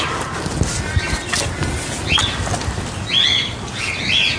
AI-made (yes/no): no